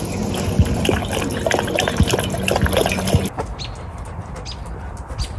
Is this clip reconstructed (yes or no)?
no